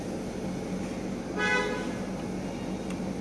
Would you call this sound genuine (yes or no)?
yes